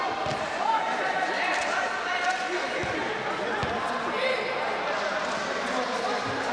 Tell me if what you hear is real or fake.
real